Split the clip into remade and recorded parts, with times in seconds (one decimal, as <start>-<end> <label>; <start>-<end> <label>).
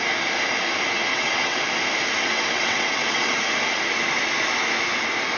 0.0-1.1 recorded; 1.1-1.6 remade; 1.6-2.2 recorded; 2.2-3.4 remade; 3.4-5.4 recorded